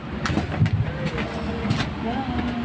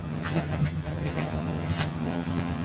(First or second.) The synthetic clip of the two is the second